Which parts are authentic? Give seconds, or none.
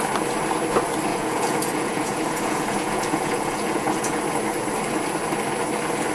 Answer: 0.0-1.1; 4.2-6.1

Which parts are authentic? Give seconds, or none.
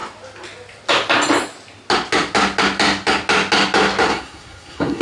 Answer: 0.0-4.1